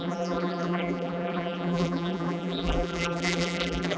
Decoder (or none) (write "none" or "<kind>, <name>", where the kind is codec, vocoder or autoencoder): vocoder, BigVGAN v2